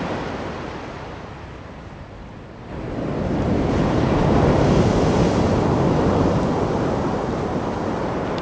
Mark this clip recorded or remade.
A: recorded